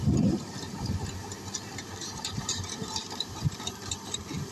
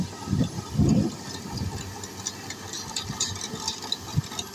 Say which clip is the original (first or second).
second